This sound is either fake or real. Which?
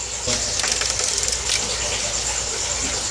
real